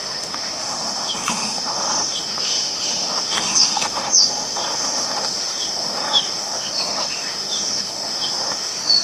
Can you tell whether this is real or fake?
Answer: fake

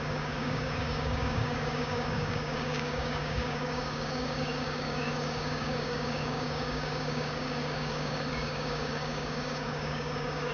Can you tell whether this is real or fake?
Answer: fake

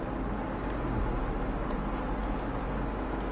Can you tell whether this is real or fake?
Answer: real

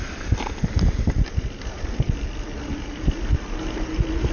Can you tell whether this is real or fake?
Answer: real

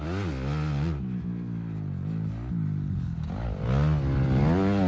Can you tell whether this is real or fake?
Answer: real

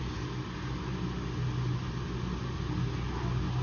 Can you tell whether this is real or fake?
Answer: real